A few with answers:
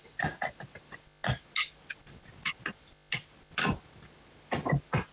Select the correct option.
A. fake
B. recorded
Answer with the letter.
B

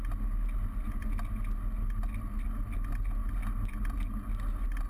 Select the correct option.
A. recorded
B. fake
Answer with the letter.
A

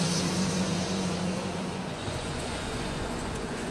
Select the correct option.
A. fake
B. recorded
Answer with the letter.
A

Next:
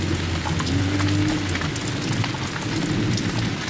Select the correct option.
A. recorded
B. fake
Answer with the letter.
A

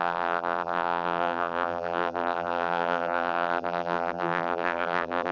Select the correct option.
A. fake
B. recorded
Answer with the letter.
A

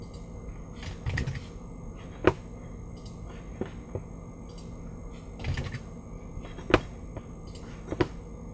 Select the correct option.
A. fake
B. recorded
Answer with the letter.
B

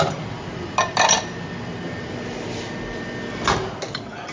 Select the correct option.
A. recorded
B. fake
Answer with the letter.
A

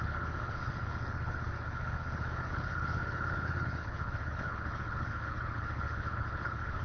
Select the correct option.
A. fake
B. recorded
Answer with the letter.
A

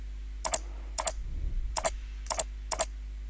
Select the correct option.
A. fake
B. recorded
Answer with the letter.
B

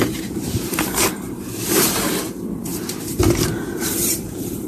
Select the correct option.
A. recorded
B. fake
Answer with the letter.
B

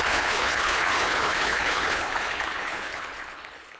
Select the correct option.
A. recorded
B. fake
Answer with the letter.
B